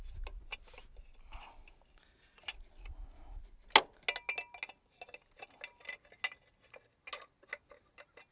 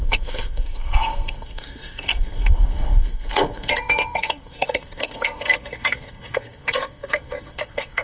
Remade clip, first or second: second